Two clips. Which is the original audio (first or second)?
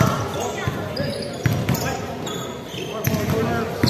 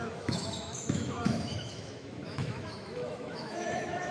first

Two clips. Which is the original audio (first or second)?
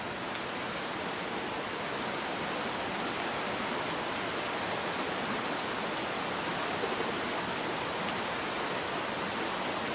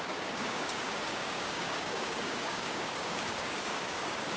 first